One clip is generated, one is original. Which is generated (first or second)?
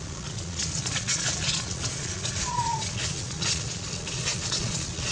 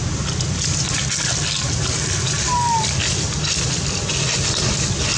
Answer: first